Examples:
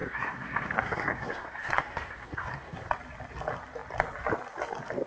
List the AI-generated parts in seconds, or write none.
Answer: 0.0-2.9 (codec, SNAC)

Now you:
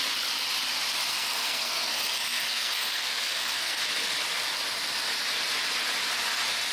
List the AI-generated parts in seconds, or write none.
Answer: 1.1-3.8 (codec, SNAC)